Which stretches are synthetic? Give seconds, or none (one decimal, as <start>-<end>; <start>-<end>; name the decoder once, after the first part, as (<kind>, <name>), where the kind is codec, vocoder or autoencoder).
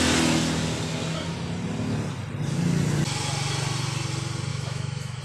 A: 4.5-5.2 (autoencoder, DAC-VAE)